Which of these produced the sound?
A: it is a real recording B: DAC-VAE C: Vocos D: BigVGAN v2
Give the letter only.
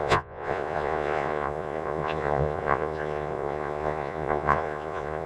C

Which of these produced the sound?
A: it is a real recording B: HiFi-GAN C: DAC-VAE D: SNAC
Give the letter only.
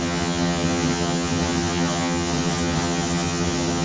B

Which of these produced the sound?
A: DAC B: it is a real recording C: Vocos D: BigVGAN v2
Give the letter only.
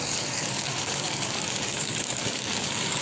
A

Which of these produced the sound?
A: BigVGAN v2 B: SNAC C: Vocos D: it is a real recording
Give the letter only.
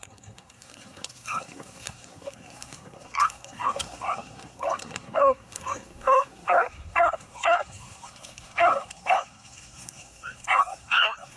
B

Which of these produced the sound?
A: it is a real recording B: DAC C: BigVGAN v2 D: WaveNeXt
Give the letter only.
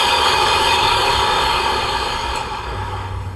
B